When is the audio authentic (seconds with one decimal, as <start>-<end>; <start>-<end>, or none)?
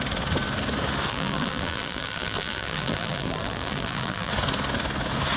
0.0-1.1; 4.3-5.4